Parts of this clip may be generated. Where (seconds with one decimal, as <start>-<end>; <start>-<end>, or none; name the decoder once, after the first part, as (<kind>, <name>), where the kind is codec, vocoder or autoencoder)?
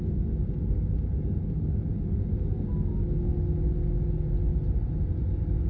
4.5-5.3 (vocoder, BigVGAN v2)